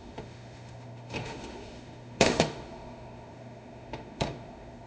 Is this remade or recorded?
remade